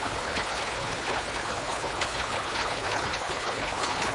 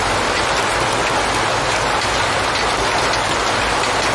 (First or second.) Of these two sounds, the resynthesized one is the first